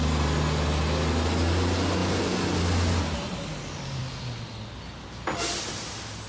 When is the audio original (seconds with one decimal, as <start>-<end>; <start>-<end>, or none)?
0.0-6.3